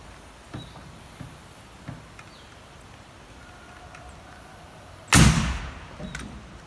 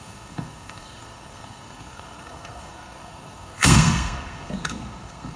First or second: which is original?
first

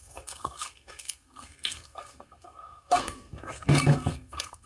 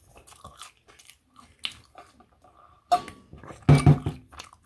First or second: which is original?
second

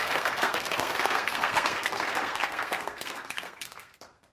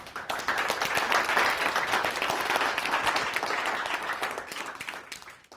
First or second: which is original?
second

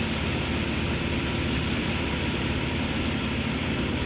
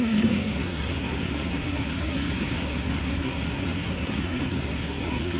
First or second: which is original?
first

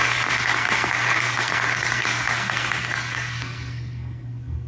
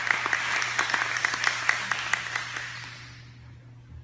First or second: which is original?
second